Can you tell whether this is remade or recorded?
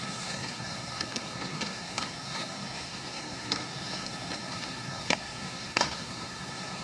remade